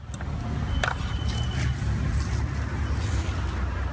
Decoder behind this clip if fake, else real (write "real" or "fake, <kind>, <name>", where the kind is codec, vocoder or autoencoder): real